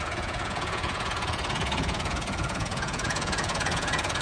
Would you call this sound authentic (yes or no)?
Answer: no